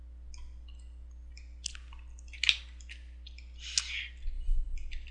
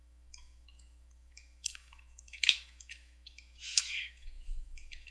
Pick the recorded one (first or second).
first